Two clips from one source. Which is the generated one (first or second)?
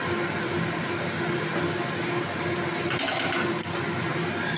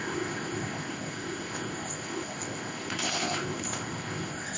second